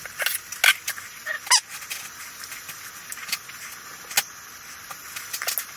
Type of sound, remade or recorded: recorded